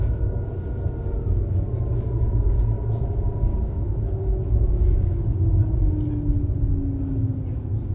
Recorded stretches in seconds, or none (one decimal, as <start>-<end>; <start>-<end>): 0.0-3.5; 5.6-7.9